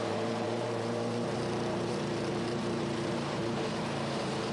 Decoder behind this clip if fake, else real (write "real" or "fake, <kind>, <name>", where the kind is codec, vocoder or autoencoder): fake, vocoder, BigVGAN v2